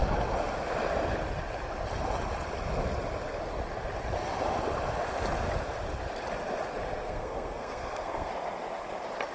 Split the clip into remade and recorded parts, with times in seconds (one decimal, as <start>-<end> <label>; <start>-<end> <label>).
0.0-6.9 recorded; 6.9-8.3 remade; 8.3-9.3 recorded